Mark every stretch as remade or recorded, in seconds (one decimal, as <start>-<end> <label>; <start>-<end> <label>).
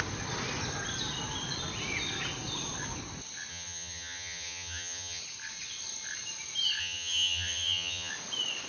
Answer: 0.0-3.5 recorded; 3.5-5.2 remade; 5.2-6.8 recorded; 6.8-8.1 remade; 8.1-8.7 recorded